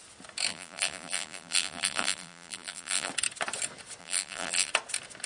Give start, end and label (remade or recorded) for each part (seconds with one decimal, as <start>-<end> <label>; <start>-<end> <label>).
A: 0.0-0.5 recorded; 0.5-3.1 remade; 3.1-4.0 recorded; 4.0-4.7 remade; 4.7-5.3 recorded